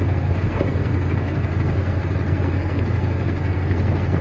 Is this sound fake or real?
fake